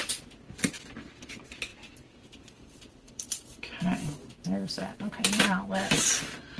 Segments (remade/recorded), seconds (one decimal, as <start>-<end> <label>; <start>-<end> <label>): 0.0-1.7 recorded; 1.7-5.7 remade; 5.7-6.6 recorded